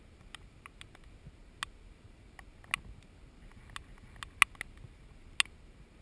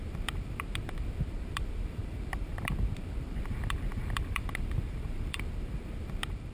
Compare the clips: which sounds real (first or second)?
first